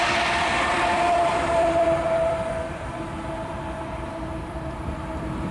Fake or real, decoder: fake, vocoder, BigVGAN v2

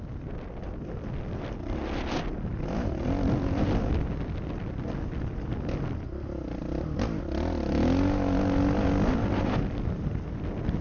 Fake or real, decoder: real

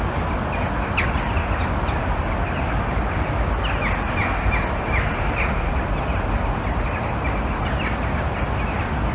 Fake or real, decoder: real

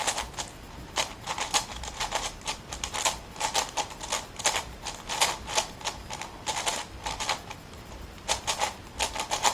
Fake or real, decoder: real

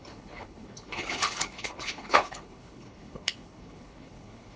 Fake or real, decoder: fake, codec, HILCodec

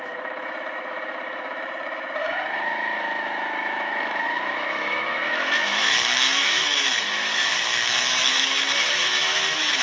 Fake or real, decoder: fake, autoencoder, DAC-VAE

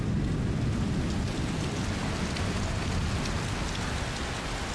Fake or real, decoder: real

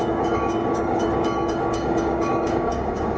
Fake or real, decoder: fake, codec, DAC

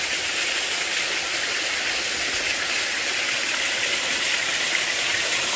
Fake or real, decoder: real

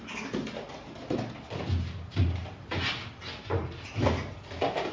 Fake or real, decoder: real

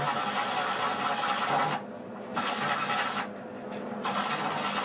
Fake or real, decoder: real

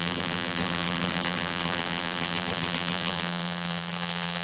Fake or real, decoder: fake, vocoder, BigVGAN v2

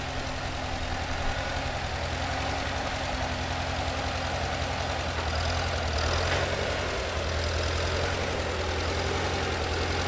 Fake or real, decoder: real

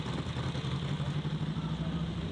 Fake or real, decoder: real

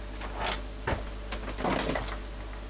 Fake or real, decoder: real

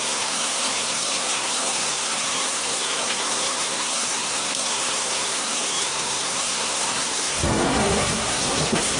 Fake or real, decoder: fake, codec, SNAC